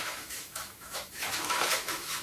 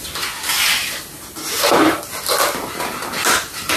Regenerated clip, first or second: first